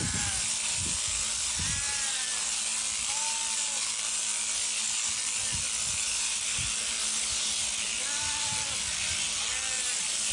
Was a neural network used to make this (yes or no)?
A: no